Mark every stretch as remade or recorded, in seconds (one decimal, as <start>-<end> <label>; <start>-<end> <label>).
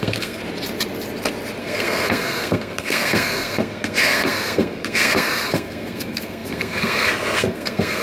0.0-0.4 remade; 0.4-1.6 recorded; 1.6-8.0 remade